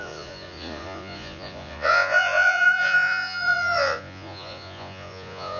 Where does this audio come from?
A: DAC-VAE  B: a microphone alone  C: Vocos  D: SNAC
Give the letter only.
C